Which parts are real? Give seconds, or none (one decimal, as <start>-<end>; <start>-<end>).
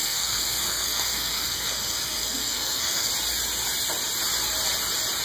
3.1-5.2